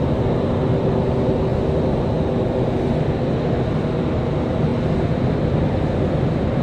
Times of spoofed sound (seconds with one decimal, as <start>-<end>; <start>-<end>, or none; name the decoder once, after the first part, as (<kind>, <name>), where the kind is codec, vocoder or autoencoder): none